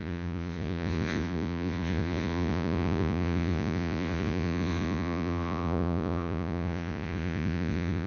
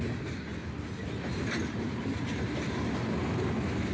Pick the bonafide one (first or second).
second